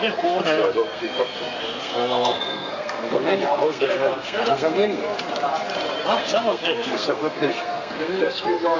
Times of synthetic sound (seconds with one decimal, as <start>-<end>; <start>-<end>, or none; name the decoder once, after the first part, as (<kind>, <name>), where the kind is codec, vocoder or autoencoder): 0.0-5.0 (codec, SNAC); 6.2-8.8